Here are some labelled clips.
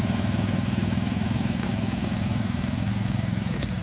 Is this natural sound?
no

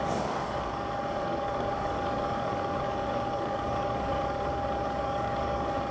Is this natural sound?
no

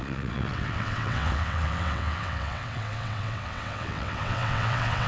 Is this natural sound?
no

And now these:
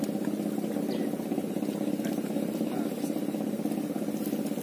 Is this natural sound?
yes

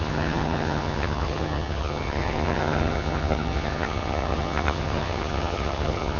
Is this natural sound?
no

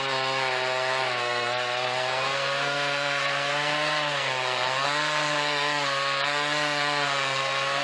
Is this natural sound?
no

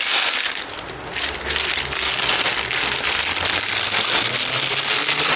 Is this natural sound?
yes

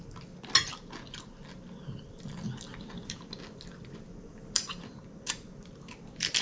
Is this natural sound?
yes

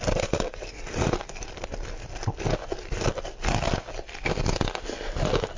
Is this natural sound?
yes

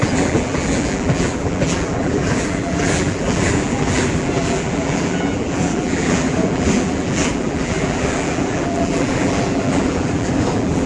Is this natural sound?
no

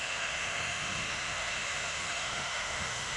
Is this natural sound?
no